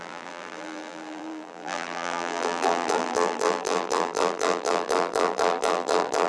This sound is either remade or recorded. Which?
remade